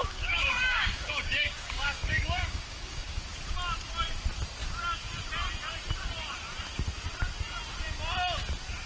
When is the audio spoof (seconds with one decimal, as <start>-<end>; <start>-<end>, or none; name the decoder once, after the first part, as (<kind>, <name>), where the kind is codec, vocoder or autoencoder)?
0.0-3.2 (codec, DAC)